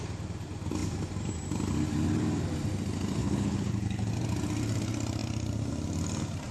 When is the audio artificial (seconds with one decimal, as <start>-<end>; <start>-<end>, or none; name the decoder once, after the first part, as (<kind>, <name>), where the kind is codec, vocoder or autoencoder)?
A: 3.2-4.1 (codec, HILCodec)